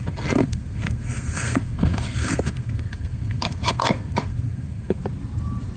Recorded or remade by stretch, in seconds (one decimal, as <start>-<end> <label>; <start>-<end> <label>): 0.0-5.0 remade; 5.0-5.8 recorded